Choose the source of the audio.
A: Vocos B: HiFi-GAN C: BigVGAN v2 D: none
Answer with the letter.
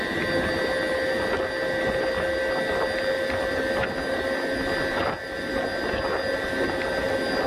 D